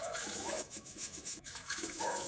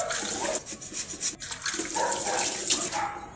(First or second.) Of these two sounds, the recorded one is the second